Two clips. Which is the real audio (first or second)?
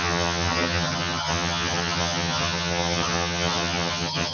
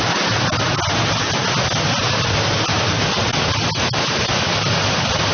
second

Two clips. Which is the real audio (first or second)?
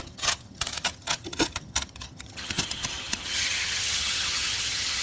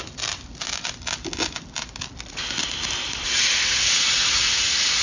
second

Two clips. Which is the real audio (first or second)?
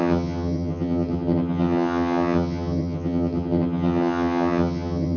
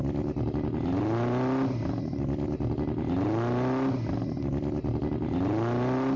second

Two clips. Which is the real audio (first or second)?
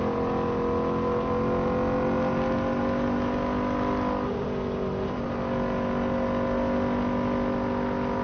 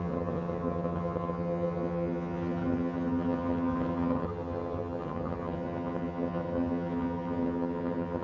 first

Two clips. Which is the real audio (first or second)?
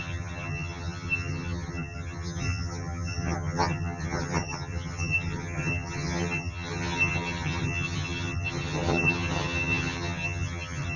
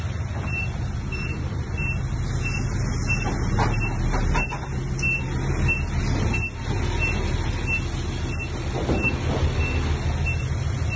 second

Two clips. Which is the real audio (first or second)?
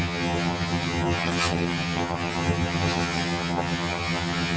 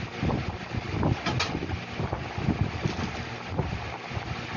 second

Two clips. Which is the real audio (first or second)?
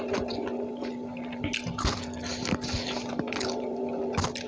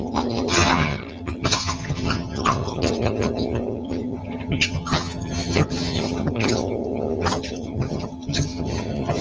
first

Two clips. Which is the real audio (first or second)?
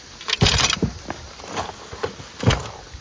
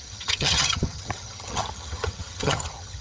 first